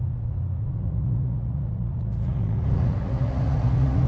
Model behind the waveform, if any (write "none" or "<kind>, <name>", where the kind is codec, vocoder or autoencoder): vocoder, Vocos